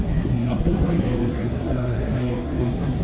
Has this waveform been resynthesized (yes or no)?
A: yes